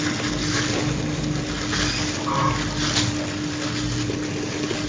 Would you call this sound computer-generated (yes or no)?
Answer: no